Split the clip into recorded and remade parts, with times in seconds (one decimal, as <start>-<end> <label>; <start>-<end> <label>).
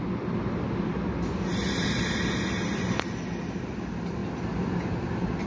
0.0-1.5 recorded; 1.5-2.1 remade; 2.1-4.2 recorded; 4.2-4.9 remade; 4.9-5.5 recorded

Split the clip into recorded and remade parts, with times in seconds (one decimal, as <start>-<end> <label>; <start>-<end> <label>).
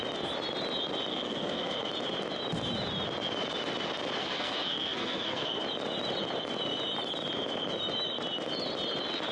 0.0-1.1 recorded; 1.1-1.9 remade; 1.9-4.2 recorded; 4.2-5.6 remade; 5.6-9.3 recorded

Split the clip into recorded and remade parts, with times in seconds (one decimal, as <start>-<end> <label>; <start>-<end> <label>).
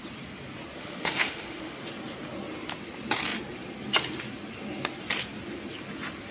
0.0-0.8 recorded; 0.8-1.9 remade; 1.9-6.3 recorded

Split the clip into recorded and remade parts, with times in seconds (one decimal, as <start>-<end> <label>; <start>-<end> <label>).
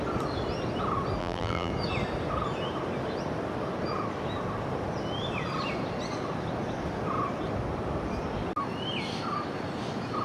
0.0-1.2 recorded; 1.2-1.7 remade; 1.7-10.2 recorded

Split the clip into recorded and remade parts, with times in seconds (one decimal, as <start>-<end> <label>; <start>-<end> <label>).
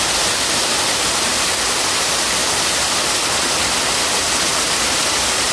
0.0-5.5 recorded